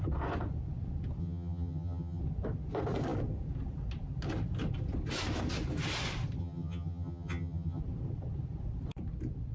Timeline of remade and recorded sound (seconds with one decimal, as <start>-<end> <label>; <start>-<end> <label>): 0.0-1.2 recorded; 1.2-2.2 remade; 2.2-6.4 recorded; 6.4-7.8 remade; 7.8-9.5 recorded